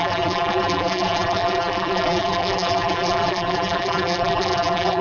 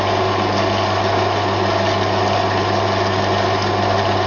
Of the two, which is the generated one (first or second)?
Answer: first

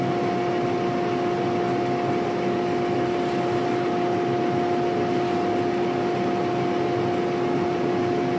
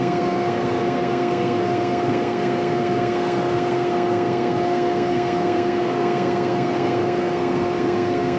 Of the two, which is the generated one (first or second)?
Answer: second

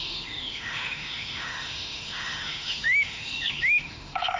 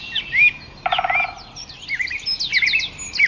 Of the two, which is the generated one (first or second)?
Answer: first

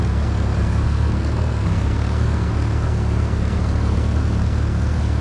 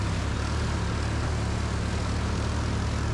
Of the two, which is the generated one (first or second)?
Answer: first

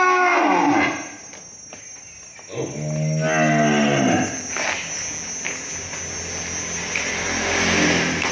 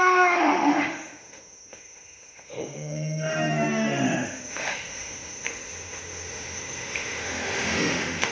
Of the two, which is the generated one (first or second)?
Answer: second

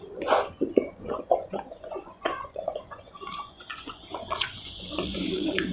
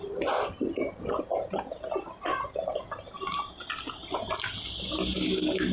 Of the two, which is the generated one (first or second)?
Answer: first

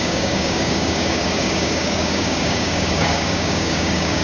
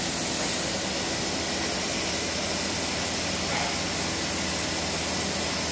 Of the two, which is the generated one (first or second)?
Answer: first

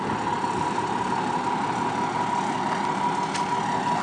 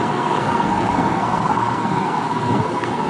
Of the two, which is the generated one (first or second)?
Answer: second